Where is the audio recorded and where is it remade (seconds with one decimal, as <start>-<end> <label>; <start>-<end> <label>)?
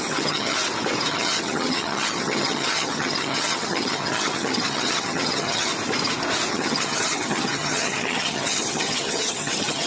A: 0.0-0.6 remade; 0.6-1.1 recorded; 1.1-5.7 remade; 5.7-6.5 recorded; 6.5-9.9 remade